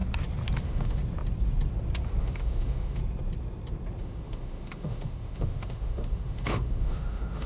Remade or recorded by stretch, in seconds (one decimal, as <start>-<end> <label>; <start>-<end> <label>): 0.0-0.6 recorded; 0.6-1.0 remade; 1.0-2.2 recorded; 2.2-3.0 remade; 3.0-4.0 recorded; 4.0-7.5 remade